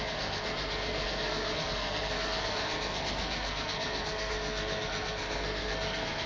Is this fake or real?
fake